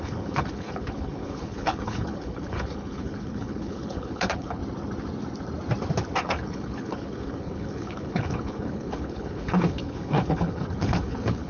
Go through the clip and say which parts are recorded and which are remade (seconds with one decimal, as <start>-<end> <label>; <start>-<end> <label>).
0.0-4.6 remade; 4.6-6.2 recorded; 6.2-11.5 remade